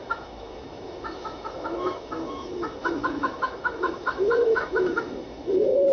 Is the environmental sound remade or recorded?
remade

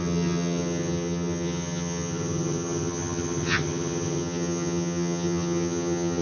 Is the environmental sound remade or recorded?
remade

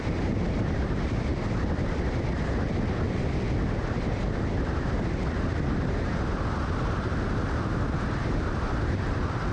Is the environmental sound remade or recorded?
recorded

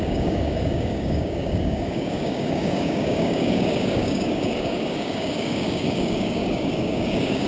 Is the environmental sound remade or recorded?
remade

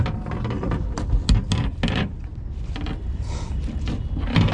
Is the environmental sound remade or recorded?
recorded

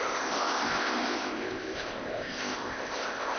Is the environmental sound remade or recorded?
remade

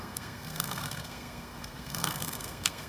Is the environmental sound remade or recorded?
remade